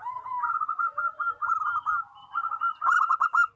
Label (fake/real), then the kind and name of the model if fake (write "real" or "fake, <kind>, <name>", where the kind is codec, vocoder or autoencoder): real